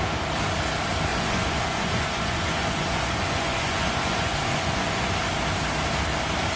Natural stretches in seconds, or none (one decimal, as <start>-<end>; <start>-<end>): 0.0-1.1; 5.1-6.6